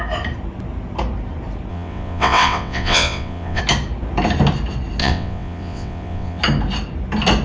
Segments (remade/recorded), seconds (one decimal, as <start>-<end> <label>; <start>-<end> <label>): 0.0-1.7 recorded; 1.7-3.6 remade; 3.6-5.0 recorded; 5.0-6.4 remade; 6.4-7.4 recorded